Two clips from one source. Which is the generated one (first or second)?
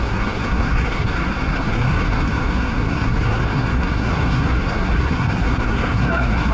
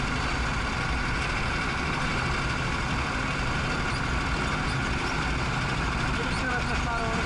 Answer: first